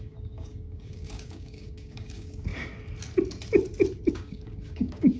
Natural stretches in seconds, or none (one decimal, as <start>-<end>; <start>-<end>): 2.5-4.1

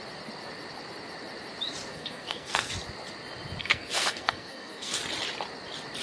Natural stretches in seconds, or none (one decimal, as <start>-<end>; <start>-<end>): 0.0-1.9; 2.7-3.6; 5.0-6.0

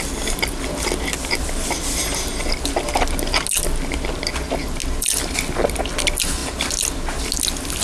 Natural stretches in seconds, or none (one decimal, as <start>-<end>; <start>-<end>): 0.0-7.8

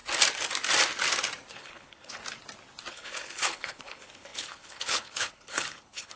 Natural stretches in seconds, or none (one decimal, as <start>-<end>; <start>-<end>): 0.0-1.5; 2.2-2.9

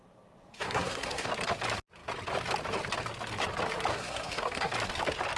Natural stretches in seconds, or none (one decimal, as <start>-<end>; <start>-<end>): 0.0-0.5; 1.3-3.9; 4.7-5.4